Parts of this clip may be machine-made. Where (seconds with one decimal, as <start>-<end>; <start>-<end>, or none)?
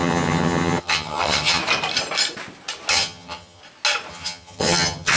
0.0-1.6; 2.9-3.6; 4.1-5.2